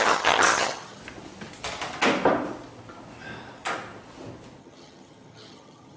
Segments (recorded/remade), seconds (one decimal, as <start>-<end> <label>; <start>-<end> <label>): 0.0-1.0 remade; 1.0-4.6 recorded; 4.6-6.0 remade